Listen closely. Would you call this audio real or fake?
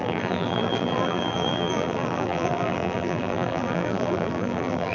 fake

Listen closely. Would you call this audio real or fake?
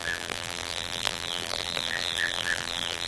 fake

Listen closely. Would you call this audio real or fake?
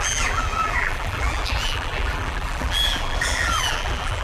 fake